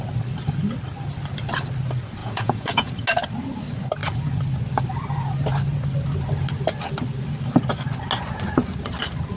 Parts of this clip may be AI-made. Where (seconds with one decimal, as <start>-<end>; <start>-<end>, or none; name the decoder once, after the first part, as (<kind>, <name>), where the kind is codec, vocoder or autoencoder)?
2.2-2.9 (vocoder, Vocos)